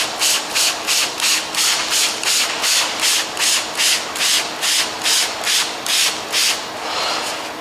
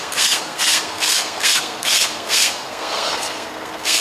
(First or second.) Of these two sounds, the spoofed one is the second